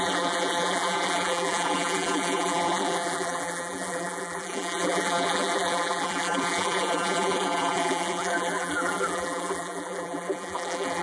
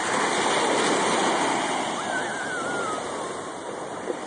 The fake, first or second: first